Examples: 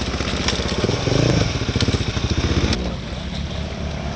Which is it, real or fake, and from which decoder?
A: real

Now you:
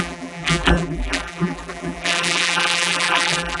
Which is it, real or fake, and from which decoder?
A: fake, vocoder, BigVGAN v2